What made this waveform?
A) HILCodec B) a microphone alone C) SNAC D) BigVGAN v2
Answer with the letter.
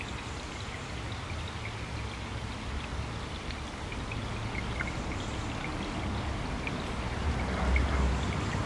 B